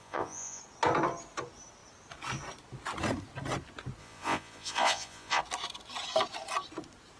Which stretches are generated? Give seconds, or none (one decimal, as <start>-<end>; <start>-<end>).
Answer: 0.0-0.6; 4.0-5.4